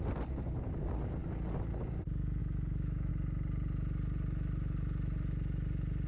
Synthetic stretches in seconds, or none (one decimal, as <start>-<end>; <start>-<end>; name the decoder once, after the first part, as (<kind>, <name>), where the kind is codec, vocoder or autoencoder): 2.4-3.1 (autoencoder, DAC-VAE)